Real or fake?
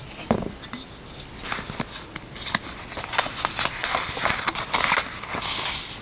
real